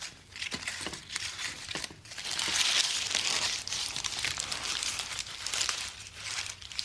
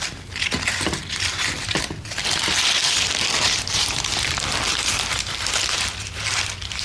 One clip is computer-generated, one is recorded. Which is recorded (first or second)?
second